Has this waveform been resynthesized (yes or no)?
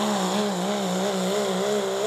no